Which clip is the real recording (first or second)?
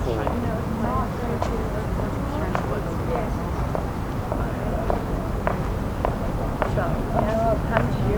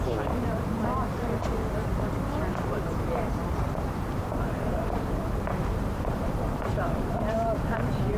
first